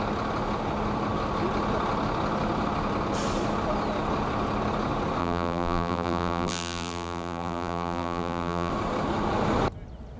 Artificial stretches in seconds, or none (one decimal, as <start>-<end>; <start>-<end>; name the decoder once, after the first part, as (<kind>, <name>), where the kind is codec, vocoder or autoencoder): 5.2-8.7 (vocoder, BigVGAN v2)

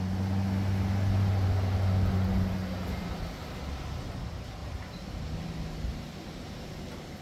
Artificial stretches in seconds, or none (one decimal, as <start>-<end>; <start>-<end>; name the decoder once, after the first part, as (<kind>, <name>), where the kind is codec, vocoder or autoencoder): 4.6-5.2 (vocoder, BigVGAN v2)

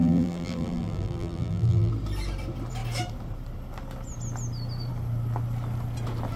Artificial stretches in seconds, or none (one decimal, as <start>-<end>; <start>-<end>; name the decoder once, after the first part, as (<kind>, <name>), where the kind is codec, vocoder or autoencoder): 0.0-1.9 (vocoder, BigVGAN v2)

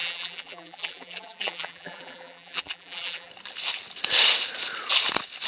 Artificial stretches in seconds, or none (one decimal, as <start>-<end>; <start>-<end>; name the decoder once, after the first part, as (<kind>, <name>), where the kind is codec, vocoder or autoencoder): 0.0-3.3 (vocoder, BigVGAN v2)

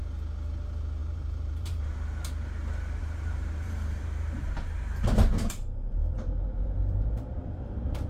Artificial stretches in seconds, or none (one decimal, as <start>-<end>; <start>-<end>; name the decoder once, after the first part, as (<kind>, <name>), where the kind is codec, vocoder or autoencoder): 1.0-1.9 (vocoder, BigVGAN v2); 3.0-8.1

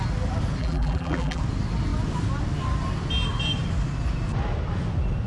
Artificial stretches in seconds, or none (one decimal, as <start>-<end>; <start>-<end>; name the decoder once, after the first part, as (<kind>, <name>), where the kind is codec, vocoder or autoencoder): 0.6-1.4 (vocoder, BigVGAN v2)

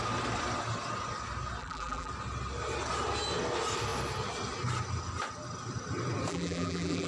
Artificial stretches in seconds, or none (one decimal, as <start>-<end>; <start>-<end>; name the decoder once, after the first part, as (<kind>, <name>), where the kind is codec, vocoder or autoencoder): 1.6-2.1 (vocoder, BigVGAN v2); 6.3-7.1

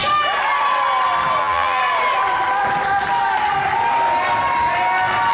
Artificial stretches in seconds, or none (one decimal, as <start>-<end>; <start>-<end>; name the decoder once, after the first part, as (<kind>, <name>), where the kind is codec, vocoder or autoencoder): 1.4-1.8 (vocoder, BigVGAN v2)